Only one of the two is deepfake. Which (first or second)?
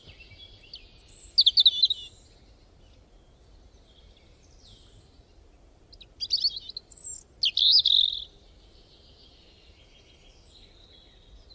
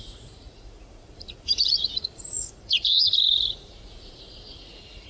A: second